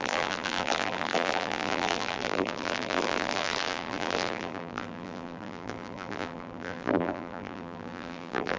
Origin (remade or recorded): remade